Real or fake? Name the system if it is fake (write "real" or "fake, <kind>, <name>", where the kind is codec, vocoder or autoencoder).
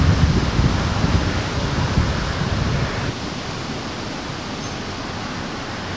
real